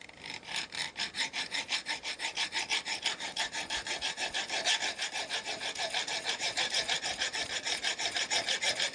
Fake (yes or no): yes